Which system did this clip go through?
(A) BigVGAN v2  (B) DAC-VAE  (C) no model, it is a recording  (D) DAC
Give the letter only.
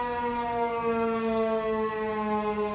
D